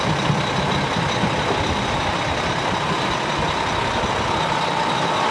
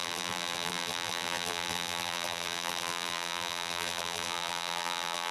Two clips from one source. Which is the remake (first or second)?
second